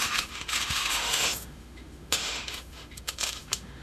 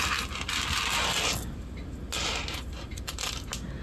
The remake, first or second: first